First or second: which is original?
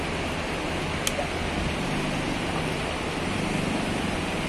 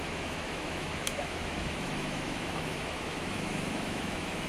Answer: first